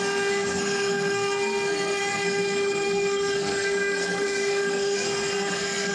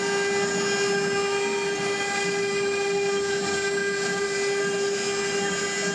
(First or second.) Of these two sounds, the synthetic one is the first